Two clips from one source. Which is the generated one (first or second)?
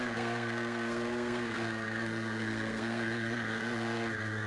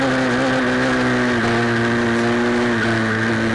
first